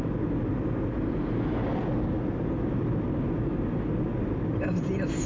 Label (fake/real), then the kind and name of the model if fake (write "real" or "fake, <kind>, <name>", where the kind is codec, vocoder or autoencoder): real